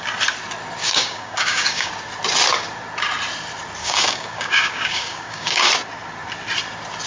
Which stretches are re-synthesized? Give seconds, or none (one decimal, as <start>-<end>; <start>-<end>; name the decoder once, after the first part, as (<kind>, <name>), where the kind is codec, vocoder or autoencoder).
0.8-1.9 (codec, DAC); 3.8-5.7